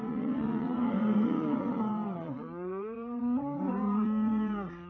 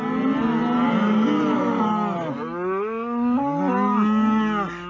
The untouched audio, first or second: second